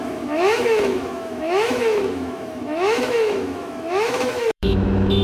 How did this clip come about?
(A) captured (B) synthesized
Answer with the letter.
B